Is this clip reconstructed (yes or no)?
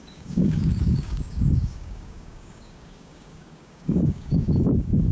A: yes